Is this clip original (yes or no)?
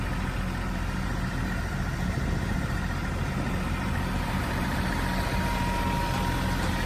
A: yes